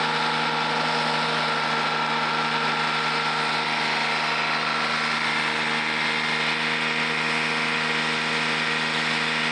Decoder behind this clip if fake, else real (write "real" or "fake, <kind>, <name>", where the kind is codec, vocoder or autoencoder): real